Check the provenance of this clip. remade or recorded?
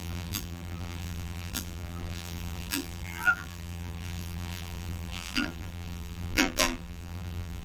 remade